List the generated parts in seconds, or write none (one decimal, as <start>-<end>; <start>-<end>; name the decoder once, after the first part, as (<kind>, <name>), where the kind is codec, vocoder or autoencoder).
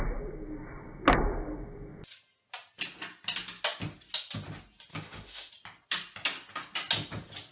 4.9-5.5 (autoencoder, DAC-VAE)